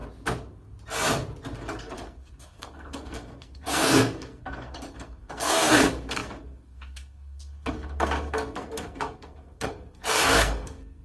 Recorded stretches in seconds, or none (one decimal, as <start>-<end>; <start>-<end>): 0.0-1.8